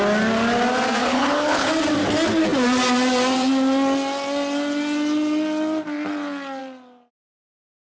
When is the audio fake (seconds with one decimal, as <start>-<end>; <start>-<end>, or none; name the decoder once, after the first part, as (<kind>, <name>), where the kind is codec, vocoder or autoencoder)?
1.0-1.7 (codec, HILCodec)